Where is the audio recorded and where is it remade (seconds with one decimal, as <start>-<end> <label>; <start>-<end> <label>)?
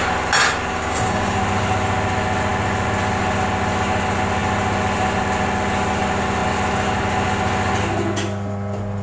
0.0-0.7 recorded; 0.7-1.4 remade; 1.4-9.0 recorded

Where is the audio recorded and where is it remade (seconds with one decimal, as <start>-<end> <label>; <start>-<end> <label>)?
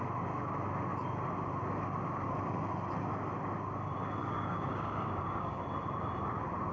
0.0-4.2 recorded; 4.2-5.6 remade; 5.6-6.7 recorded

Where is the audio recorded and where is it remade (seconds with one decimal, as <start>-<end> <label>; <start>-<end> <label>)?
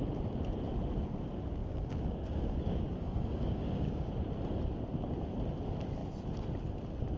0.0-1.6 recorded; 1.6-4.1 remade; 4.1-7.2 recorded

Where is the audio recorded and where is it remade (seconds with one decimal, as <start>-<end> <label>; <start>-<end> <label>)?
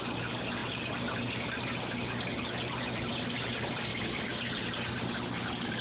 0.0-3.9 recorded; 3.9-4.5 remade; 4.5-5.8 recorded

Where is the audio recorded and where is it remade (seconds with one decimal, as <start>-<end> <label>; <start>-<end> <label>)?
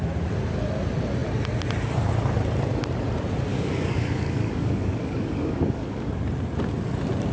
0.0-3.5 recorded; 3.5-6.1 remade; 6.1-7.3 recorded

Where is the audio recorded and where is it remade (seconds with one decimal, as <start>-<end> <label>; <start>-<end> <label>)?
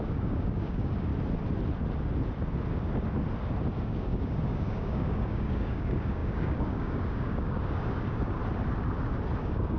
0.0-1.1 remade; 1.1-3.8 recorded; 3.8-8.4 remade; 8.4-9.4 recorded; 9.4-9.8 remade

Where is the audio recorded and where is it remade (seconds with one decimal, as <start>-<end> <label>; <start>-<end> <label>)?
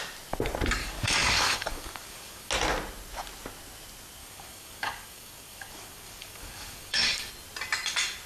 0.0-0.8 recorded; 0.8-2.5 remade; 2.5-4.2 recorded; 4.2-7.3 remade; 7.3-8.3 recorded